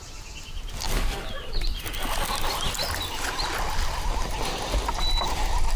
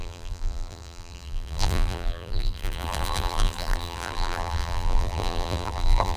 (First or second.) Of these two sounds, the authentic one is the first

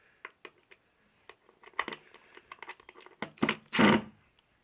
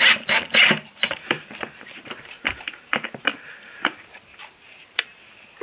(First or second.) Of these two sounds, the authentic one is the first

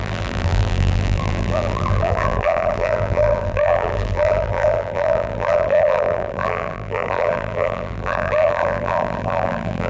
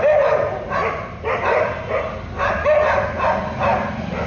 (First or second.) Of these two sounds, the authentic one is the second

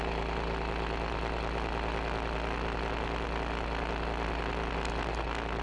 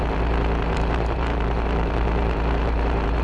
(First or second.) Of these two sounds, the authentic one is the first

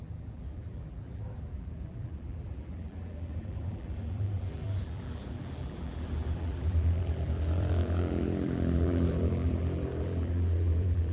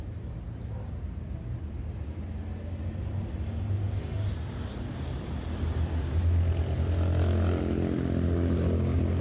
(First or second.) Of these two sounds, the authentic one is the second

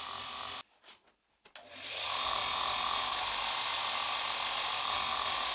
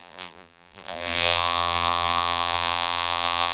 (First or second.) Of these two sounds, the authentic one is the first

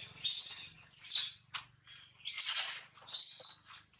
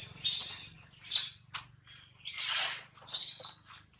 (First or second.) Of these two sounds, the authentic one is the first